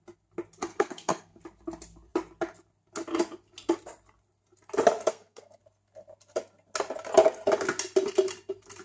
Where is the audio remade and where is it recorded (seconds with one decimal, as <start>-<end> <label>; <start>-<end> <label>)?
0.0-0.7 recorded; 0.7-1.4 remade; 1.4-5.1 recorded; 5.1-5.6 remade; 5.6-8.8 recorded